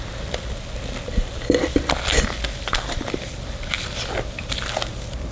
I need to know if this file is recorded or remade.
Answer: remade